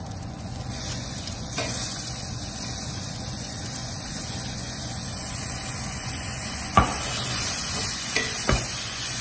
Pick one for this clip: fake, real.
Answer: fake